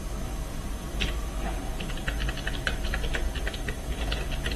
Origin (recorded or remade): recorded